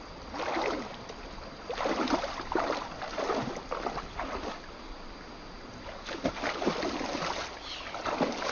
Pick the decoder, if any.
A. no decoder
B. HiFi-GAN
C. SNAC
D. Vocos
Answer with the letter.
A